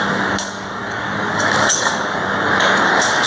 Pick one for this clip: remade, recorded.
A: remade